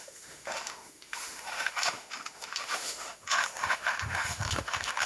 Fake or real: fake